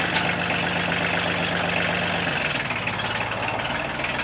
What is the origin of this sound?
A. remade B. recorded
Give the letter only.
B